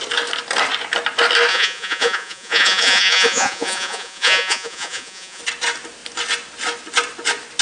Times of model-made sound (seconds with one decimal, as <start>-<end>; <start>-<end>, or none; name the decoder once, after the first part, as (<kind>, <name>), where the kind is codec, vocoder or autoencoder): 1.5-5.4 (vocoder, Vocos)